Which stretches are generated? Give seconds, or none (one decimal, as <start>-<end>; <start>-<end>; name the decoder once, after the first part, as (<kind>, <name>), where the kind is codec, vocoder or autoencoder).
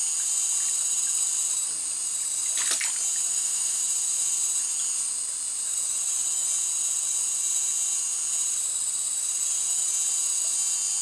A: 3.3-3.8 (autoencoder, DAC-VAE)